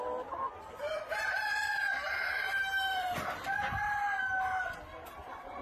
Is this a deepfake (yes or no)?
no